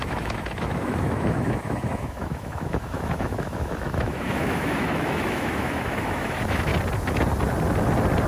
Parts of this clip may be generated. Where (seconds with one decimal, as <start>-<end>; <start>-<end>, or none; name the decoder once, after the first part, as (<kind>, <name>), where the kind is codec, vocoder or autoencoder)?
0.0-6.7 (autoencoder, DAC-VAE)